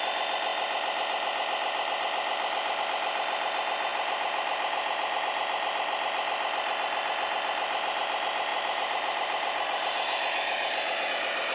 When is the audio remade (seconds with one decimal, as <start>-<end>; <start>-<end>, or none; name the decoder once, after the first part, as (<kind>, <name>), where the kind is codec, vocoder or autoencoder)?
3.9-5.2 (vocoder, BigVGAN v2); 8.5-11.1